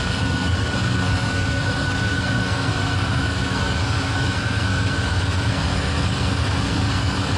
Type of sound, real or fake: fake